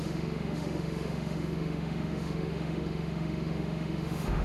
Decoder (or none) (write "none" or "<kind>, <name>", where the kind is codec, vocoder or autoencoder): autoencoder, DAC-VAE